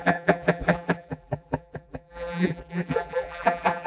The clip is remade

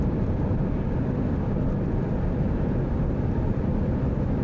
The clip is remade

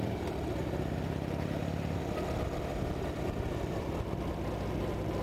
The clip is remade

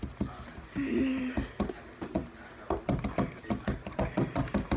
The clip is recorded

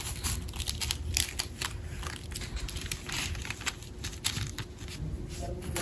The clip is recorded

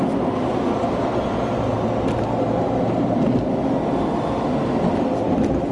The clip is recorded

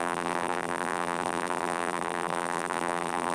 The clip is remade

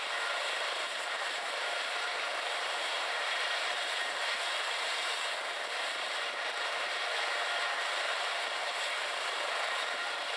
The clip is remade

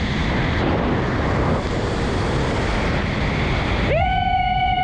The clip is recorded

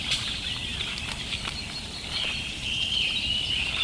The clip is remade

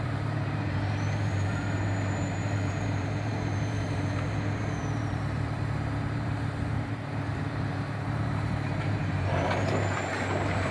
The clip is remade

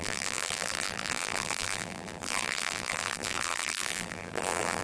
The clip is remade